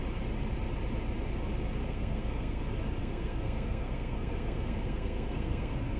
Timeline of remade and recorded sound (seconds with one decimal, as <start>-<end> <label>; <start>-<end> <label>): 0.0-1.8 recorded; 1.8-2.6 remade; 2.6-3.0 recorded; 3.0-6.0 remade

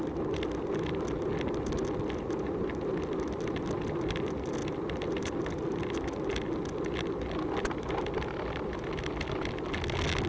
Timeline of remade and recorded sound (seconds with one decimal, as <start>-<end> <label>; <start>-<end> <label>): 0.0-10.3 recorded

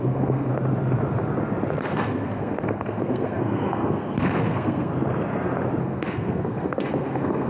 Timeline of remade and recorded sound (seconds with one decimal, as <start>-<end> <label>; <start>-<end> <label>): 0.0-0.5 remade; 0.5-1.8 recorded; 1.8-4.9 remade; 4.9-5.8 recorded; 5.8-7.5 remade

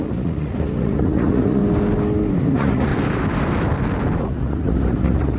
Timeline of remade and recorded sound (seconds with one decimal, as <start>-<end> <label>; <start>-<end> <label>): 0.0-1.6 remade; 1.6-2.4 recorded; 2.4-2.9 remade; 2.9-4.2 recorded; 4.2-5.4 remade

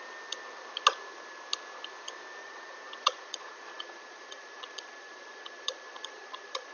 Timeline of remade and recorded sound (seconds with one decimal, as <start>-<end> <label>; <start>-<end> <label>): 0.0-2.4 recorded; 2.4-6.7 remade

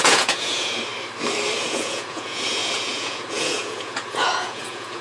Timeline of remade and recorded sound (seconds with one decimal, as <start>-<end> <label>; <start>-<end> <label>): 0.0-0.9 remade; 0.9-1.6 recorded; 1.6-5.0 remade

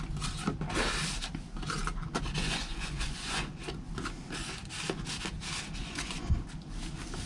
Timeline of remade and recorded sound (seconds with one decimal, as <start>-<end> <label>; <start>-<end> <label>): 0.0-2.4 recorded; 2.4-3.9 remade; 3.9-5.8 recorded; 5.8-6.4 remade; 6.4-7.3 recorded

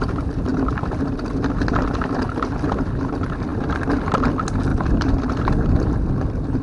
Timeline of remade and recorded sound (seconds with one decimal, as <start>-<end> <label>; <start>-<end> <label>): 0.0-6.6 recorded